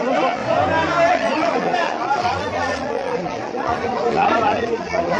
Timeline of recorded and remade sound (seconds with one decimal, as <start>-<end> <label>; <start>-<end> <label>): 0.0-0.4 remade; 0.4-1.1 recorded; 1.1-5.2 remade